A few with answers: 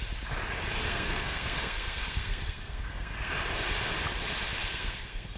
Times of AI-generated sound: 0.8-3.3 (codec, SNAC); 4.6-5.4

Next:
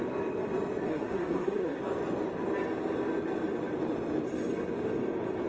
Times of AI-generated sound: 0.9-1.8 (codec, SNAC)

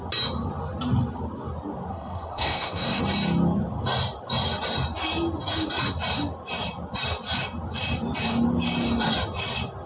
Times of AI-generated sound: 1.9-3.0 (codec, SNAC)

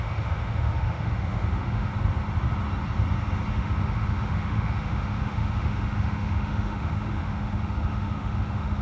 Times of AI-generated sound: 0.0-1.9 (autoencoder, DAC-VAE); 3.5-8.8

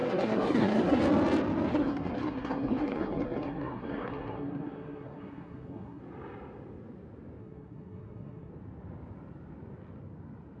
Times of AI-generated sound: 0.0-1.0 (codec, SNAC); 1.7-6.0; 7.4-8.5